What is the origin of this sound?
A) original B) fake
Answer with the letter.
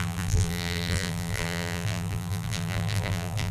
B